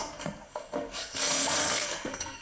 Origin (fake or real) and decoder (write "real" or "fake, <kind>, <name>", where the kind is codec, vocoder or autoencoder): fake, codec, SNAC